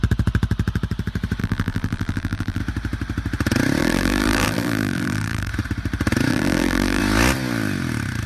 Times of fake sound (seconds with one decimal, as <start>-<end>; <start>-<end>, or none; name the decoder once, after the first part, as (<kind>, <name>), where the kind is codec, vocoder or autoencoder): 1.4-2.6 (vocoder, BigVGAN v2); 3.8-5.5; 6.3-7.0